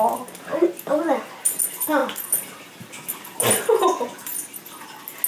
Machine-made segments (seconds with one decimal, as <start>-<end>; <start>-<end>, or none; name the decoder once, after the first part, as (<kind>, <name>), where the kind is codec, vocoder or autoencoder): none